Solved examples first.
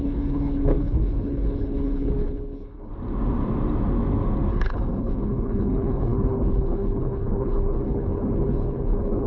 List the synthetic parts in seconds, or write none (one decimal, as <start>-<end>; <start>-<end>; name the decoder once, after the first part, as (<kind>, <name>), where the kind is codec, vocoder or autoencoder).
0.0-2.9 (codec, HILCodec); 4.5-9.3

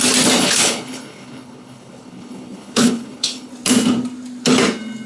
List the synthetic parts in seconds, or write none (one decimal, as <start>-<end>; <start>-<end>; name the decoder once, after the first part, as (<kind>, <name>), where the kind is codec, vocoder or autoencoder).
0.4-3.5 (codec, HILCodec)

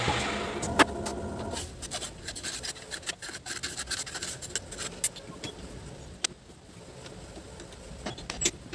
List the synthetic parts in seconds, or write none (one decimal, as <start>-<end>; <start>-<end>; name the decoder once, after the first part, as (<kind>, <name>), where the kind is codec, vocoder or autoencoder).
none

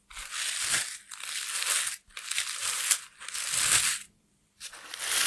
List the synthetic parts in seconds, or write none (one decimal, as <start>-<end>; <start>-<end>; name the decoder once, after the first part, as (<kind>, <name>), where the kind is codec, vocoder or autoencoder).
none